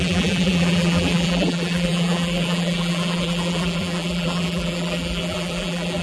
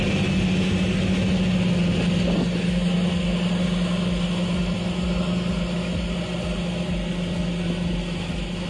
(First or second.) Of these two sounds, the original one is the second